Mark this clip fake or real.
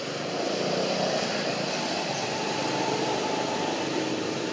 real